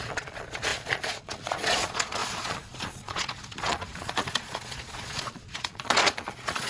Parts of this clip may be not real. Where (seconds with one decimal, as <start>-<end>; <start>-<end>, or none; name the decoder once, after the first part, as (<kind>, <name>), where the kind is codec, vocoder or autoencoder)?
0.0-6.7 (vocoder, Vocos)